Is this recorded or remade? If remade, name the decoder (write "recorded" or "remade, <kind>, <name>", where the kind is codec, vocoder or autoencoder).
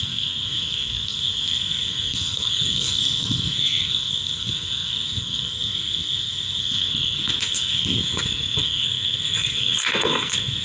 remade, codec, SNAC